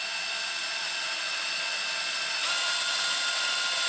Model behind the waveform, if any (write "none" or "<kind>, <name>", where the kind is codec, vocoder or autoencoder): none